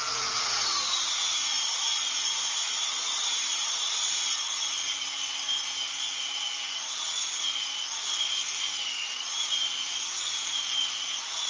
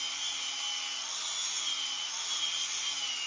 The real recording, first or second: second